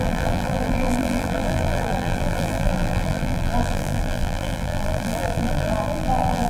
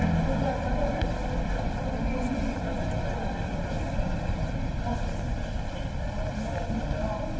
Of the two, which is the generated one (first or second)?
first